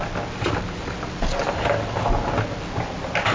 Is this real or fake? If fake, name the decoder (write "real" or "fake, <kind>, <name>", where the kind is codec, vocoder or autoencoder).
real